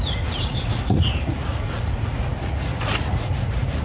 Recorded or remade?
remade